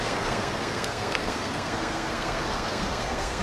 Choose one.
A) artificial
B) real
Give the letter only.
A